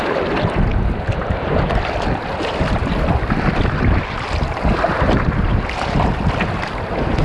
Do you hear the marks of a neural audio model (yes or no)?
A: no